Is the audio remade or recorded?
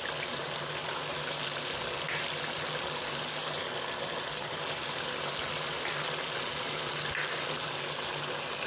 recorded